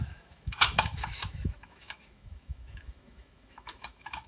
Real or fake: fake